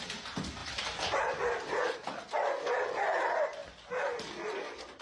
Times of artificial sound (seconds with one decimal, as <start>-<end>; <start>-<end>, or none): none